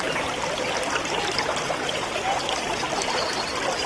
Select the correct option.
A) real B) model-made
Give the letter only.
A